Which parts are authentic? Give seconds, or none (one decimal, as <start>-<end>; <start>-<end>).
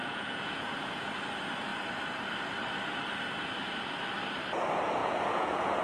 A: 1.1-5.0